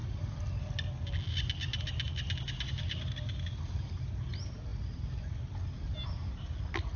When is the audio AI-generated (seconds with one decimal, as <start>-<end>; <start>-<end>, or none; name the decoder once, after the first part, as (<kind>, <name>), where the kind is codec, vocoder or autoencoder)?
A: none